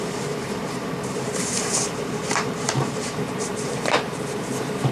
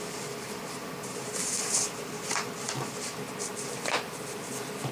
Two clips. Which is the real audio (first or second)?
second